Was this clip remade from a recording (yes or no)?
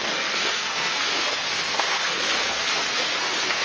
yes